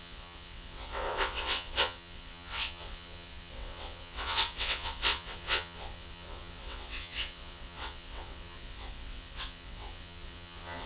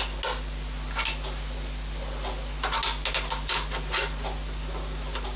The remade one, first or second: first